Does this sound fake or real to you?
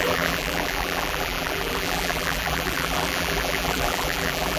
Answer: fake